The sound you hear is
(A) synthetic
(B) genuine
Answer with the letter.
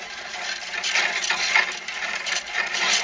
A